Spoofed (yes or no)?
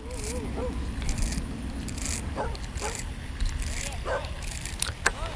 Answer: no